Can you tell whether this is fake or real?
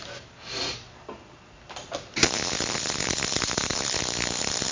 real